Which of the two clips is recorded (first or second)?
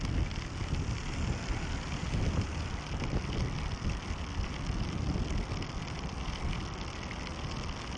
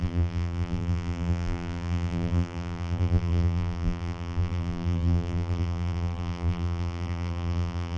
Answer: first